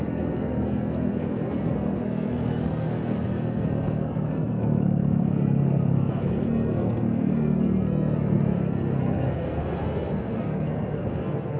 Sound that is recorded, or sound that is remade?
remade